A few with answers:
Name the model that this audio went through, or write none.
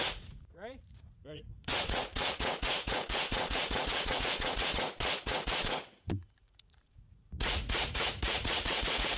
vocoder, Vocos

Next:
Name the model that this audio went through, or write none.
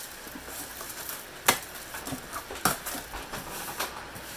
none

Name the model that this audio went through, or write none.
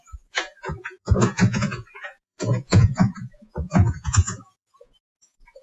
vocoder, Vocos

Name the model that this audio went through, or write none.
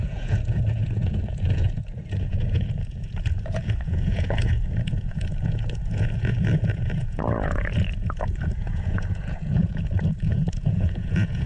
vocoder, Vocos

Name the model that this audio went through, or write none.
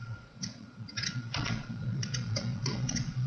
vocoder, Vocos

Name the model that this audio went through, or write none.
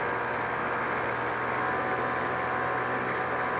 none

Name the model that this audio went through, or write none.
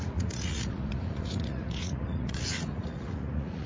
vocoder, Vocos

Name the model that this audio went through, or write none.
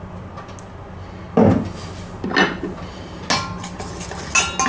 none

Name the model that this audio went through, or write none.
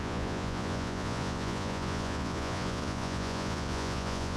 vocoder, Vocos